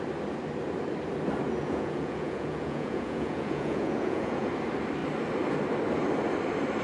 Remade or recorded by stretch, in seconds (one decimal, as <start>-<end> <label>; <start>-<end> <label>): 0.0-1.6 recorded; 1.6-4.5 remade; 4.5-6.8 recorded

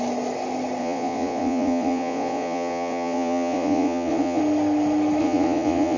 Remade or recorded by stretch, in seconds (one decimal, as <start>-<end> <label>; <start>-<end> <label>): 0.0-0.8 recorded; 0.8-4.4 remade; 4.4-5.2 recorded; 5.2-6.0 remade

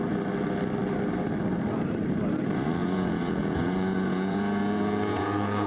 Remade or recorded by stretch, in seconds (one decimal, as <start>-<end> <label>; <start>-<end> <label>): 0.0-2.8 recorded; 2.8-5.7 remade

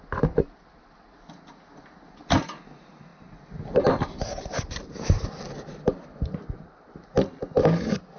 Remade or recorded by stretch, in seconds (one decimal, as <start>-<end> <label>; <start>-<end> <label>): 0.0-8.2 recorded

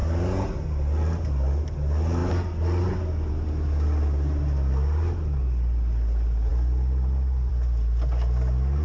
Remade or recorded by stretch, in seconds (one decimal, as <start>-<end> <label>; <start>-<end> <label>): 0.0-8.8 recorded

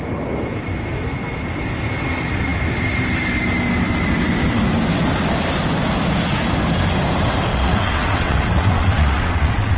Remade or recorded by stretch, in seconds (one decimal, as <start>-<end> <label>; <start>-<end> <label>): 0.0-7.5 recorded; 7.5-9.8 remade

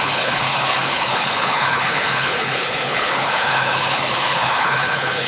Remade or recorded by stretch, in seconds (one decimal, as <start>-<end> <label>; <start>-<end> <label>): 0.0-5.3 remade

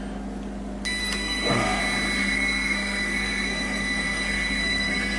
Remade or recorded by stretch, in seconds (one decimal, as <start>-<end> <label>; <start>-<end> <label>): 0.0-1.0 recorded; 1.0-1.8 remade; 1.8-2.2 recorded; 2.2-5.2 remade